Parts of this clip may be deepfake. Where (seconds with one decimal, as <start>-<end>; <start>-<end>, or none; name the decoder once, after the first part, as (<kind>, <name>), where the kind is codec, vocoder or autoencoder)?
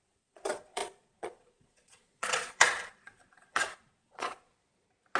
0.0-4.5 (vocoder, Vocos)